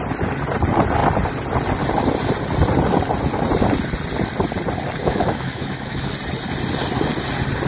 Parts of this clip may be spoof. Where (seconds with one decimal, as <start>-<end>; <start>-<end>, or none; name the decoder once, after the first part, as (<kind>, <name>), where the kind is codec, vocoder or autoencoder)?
5.0-6.1 (autoencoder, DAC-VAE)